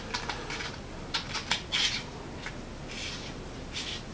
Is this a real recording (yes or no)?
yes